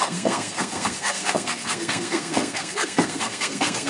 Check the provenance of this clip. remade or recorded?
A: remade